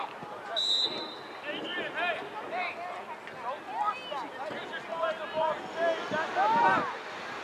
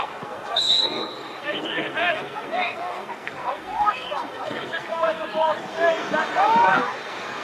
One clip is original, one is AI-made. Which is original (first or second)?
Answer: first